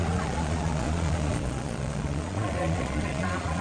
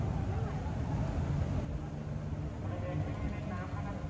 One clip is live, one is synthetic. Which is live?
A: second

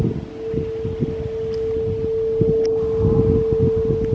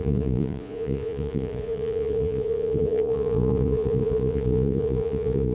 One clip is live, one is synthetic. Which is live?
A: first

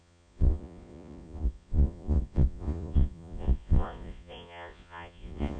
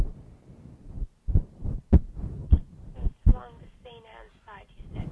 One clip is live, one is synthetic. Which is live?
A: second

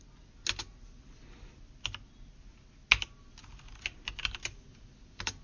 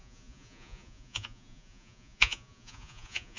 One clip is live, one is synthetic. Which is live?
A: first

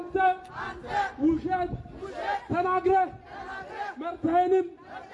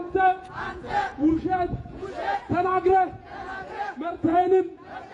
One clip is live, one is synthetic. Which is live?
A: first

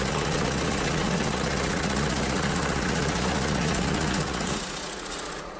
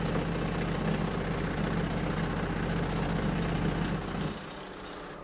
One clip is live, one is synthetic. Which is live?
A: second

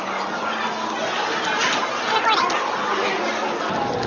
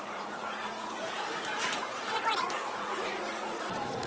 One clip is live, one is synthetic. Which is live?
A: first